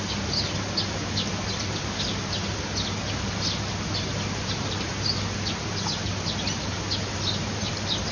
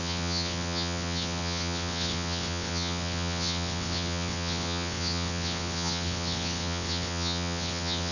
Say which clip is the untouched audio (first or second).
first